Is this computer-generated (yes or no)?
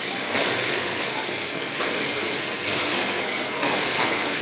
yes